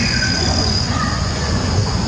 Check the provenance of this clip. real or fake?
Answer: fake